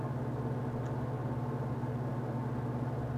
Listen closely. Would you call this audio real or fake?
real